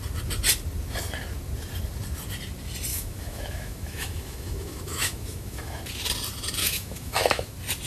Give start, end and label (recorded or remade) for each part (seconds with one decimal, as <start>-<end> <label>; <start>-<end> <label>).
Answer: 0.0-2.9 recorded; 2.9-5.8 remade; 5.8-6.6 recorded; 6.6-7.5 remade; 7.5-7.9 recorded